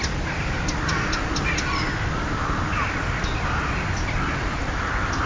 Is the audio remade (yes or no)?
no